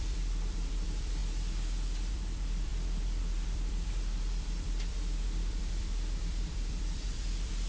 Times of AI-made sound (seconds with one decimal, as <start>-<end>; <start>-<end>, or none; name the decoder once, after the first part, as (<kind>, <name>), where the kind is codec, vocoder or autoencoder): 0.0-1.2 (vocoder, BigVGAN v2); 2.1-7.7